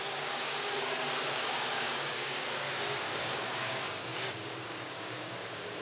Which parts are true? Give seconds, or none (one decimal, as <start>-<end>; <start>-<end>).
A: none